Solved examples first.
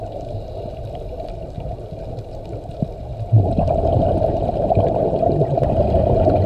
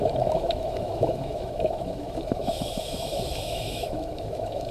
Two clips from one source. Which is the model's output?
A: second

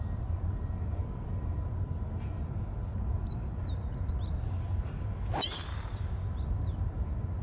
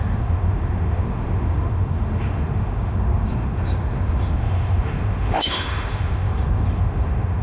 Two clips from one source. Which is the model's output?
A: second